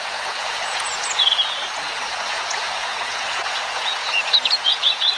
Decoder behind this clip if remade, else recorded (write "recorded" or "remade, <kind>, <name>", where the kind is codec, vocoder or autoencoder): remade, vocoder, Vocos